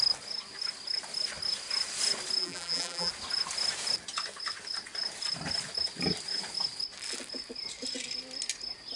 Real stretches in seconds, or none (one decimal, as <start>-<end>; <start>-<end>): 0.0-2.4; 3.1-9.0